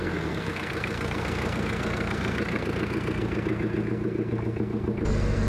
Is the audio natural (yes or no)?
no